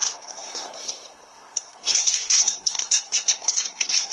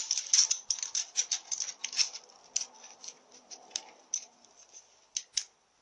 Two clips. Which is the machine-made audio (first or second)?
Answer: first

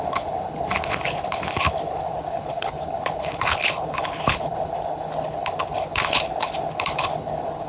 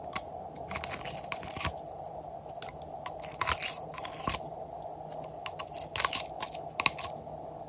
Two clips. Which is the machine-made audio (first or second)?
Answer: first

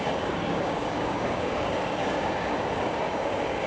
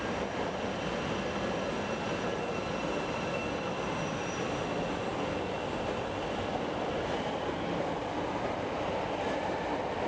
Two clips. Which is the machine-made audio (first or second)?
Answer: first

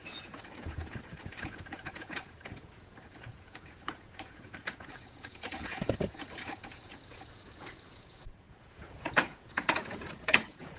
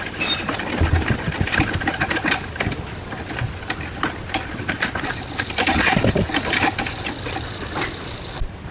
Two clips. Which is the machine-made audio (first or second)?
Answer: first